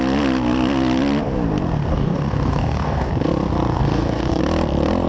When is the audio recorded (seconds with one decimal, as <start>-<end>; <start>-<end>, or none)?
0.0-1.9; 3.1-3.8; 4.4-5.1